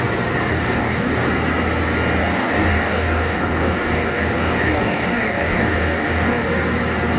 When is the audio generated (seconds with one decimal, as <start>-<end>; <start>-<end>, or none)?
0.5-1.3; 2.2-6.5